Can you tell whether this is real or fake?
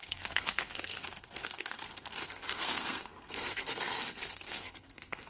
fake